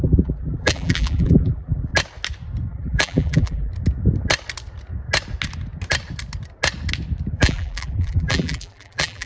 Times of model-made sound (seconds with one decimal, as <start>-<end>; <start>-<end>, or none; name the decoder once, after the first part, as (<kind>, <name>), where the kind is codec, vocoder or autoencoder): 0.0-1.9 (vocoder, BigVGAN v2); 2.7-3.7; 7.3-9.3